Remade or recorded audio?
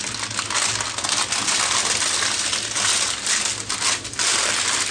recorded